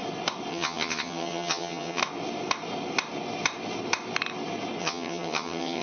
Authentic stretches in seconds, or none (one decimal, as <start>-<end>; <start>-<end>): 0.0-0.5; 2.0-4.8